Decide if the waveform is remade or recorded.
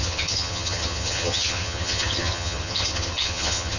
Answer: remade